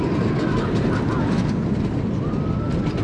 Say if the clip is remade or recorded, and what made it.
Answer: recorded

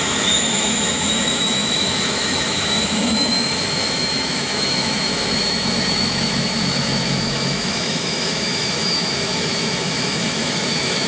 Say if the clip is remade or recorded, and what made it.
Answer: remade, autoencoder, DAC-VAE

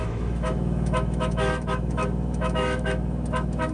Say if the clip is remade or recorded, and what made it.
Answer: remade, autoencoder, DAC-VAE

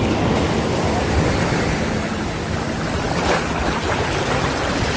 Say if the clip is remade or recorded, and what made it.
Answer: recorded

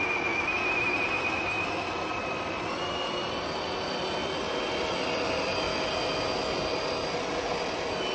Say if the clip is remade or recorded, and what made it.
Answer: recorded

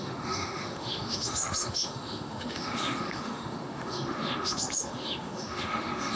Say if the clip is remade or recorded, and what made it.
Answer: remade, autoencoder, DAC-VAE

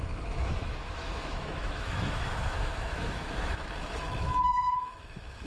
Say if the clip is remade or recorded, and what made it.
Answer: remade, autoencoder, DAC-VAE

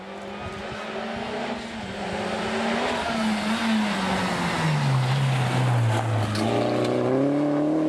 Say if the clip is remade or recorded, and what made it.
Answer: recorded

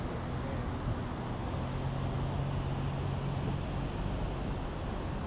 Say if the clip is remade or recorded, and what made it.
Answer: recorded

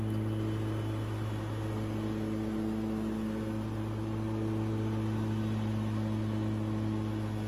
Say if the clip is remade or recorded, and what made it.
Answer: recorded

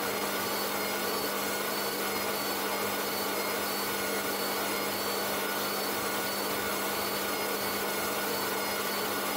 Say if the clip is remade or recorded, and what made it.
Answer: recorded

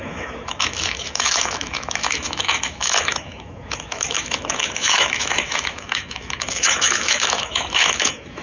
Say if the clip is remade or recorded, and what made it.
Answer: remade, autoencoder, DAC-VAE